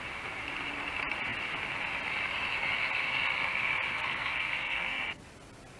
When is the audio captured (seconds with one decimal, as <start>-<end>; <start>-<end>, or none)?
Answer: 0.0-3.9; 5.2-5.8

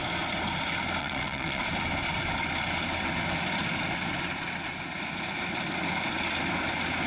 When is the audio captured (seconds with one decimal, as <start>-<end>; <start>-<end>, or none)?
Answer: 0.0-1.0; 1.6-7.1

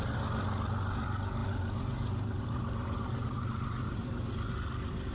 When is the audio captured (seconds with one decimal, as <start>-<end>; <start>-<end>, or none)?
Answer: 0.0-1.4; 4.5-5.1

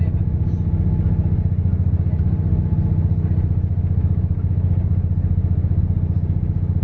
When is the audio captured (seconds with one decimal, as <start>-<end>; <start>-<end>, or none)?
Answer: 0.0-6.8